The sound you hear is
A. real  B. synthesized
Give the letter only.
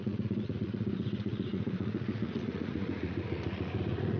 B